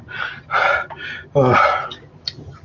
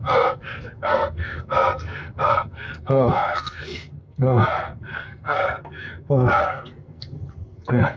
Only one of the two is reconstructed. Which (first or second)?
second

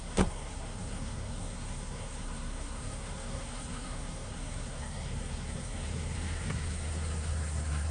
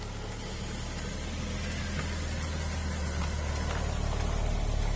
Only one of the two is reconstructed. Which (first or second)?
first